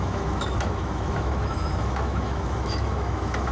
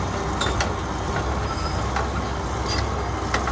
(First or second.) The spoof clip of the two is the first